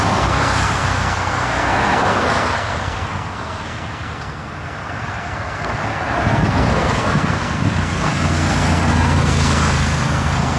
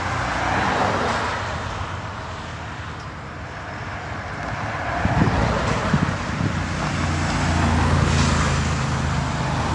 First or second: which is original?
second